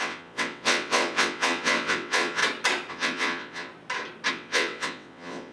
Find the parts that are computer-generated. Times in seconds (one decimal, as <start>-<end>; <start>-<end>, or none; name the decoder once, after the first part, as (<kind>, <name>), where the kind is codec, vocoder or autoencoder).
0.0-2.4 (vocoder, WaveNeXt); 2.9-3.7; 4.3-5.5